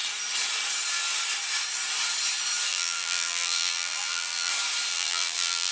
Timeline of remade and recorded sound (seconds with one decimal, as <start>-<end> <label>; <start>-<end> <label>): 0.0-2.7 recorded; 2.7-4.5 remade; 4.5-4.9 recorded; 4.9-5.7 remade